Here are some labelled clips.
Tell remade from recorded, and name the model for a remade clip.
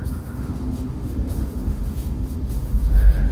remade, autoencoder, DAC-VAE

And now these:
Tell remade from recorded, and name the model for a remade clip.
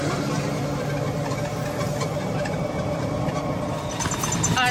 recorded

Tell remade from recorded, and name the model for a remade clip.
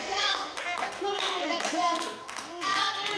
remade, codec, SNAC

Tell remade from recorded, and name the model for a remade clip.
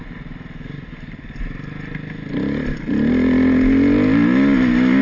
recorded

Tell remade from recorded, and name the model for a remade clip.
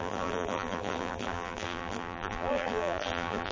remade, vocoder, BigVGAN v2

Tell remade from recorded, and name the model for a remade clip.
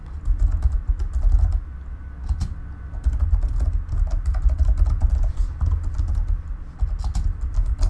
recorded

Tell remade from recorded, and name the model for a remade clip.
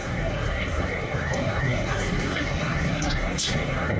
remade, codec, SNAC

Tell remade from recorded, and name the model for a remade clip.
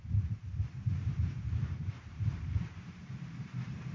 remade, vocoder, BigVGAN v2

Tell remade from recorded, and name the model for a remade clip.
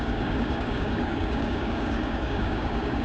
remade, codec, DAC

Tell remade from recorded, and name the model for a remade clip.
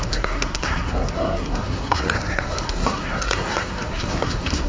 remade, codec, SNAC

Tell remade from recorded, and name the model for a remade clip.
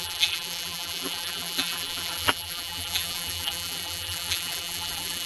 remade, vocoder, BigVGAN v2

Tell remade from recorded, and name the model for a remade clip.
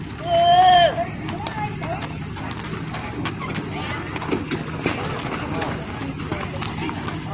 recorded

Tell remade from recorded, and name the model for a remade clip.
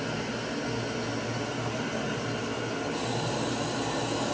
recorded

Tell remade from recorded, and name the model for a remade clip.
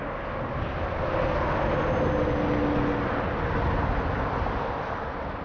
recorded